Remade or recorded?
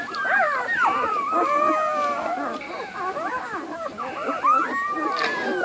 recorded